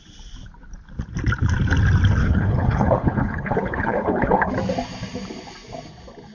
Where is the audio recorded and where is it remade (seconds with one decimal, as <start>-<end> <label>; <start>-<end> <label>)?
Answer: 0.0-2.2 recorded; 2.2-4.5 remade; 4.5-6.3 recorded